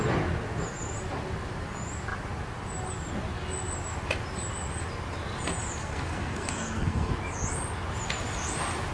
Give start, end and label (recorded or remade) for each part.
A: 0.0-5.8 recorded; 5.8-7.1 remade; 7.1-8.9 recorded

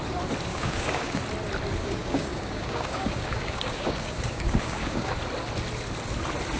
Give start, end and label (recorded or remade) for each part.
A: 0.0-0.5 recorded; 0.5-1.2 remade; 1.2-1.8 recorded; 1.8-5.2 remade; 5.2-6.6 recorded

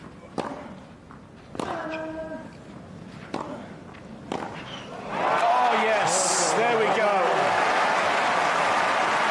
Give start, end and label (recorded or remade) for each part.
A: 0.0-9.3 recorded

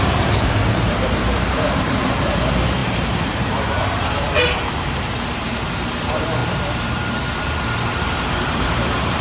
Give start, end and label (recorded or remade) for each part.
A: 0.0-6.4 remade; 6.4-8.4 recorded; 8.4-9.2 remade